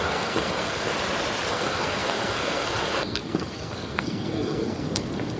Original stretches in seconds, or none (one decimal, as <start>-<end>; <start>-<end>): 0.9-1.5

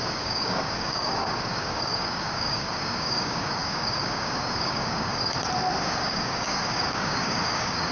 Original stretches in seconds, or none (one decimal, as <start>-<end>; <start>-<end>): 5.2-5.8

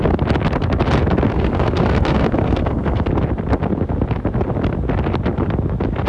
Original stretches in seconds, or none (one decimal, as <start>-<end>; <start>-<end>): 0.0-1.3; 3.1-6.1

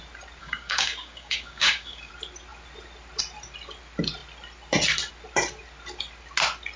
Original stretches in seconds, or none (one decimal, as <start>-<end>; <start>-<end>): 0.0-0.4; 2.1-6.8

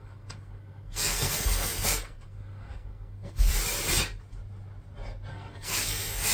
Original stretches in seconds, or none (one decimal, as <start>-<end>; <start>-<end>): 3.5-5.3

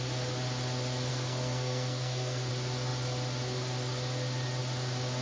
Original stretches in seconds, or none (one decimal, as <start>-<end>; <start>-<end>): 0.0-1.1; 2.5-5.2